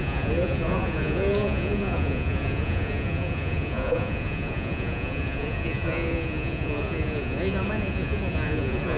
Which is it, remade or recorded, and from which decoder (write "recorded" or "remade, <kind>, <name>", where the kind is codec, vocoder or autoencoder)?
remade, vocoder, Vocos